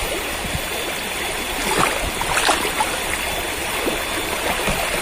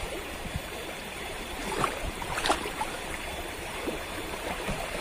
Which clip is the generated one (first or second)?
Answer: second